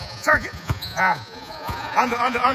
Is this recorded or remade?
remade